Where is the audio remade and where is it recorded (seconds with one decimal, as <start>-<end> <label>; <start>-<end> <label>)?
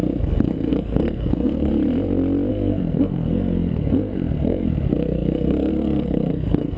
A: 0.0-1.7 remade; 1.7-2.5 recorded; 2.5-6.8 remade